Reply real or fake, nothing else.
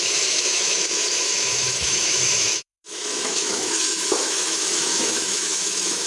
fake